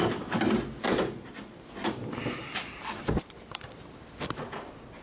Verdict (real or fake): real